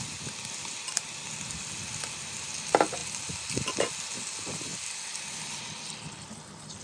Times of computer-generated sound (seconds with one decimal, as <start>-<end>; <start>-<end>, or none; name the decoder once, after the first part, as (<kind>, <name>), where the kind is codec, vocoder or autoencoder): none